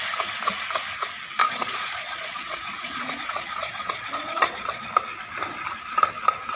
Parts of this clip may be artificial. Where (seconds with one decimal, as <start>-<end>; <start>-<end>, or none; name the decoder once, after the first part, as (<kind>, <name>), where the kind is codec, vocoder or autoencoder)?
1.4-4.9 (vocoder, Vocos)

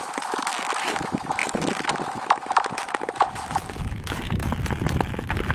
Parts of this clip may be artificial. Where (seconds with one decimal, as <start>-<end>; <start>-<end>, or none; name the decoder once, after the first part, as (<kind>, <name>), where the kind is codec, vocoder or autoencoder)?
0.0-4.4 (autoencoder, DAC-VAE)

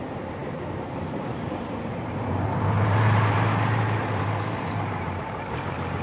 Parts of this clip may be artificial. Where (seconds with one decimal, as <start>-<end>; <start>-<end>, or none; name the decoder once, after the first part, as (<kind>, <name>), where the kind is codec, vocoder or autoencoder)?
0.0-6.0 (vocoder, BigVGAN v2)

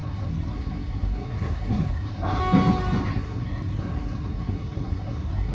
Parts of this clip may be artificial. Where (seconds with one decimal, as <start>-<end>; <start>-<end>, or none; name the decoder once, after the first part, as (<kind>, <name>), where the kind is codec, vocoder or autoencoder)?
0.0-2.4 (codec, SNAC); 3.1-5.5

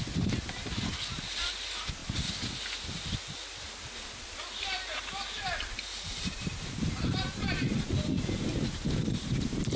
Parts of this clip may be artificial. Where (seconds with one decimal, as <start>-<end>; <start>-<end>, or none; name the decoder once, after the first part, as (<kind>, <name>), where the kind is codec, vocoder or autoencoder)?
none